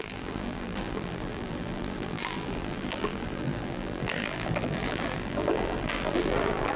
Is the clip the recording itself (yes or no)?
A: no